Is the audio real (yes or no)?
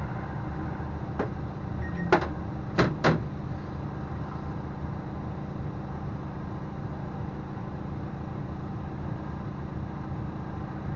yes